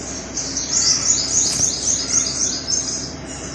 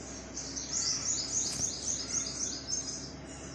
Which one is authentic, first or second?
second